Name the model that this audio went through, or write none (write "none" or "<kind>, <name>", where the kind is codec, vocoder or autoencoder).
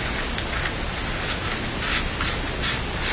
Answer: none